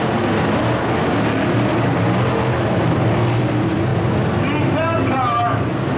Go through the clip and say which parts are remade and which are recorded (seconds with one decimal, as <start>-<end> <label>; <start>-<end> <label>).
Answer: 0.0-6.0 recorded